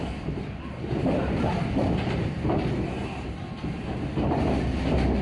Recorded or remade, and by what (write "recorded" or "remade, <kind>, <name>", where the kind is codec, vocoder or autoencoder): remade, vocoder, BigVGAN v2